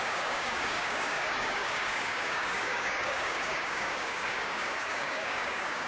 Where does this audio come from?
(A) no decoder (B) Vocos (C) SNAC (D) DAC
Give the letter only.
D